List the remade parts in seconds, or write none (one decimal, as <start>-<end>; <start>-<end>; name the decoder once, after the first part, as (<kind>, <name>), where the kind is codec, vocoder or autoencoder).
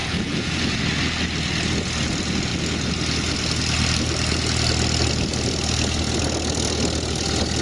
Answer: 0.0-0.8 (vocoder, Vocos)